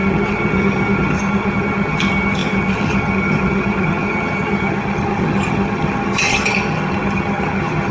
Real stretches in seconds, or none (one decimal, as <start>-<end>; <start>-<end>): none